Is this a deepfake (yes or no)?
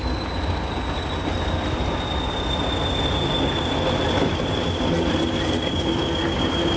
no